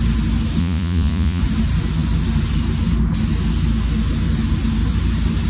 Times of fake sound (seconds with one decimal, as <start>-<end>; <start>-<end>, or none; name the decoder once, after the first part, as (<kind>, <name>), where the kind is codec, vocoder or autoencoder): 0.6-1.4 (vocoder, Vocos)